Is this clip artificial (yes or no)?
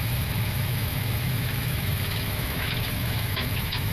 yes